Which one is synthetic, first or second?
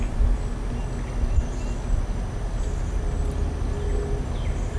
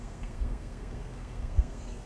second